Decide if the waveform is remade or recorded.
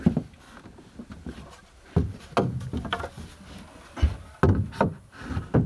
recorded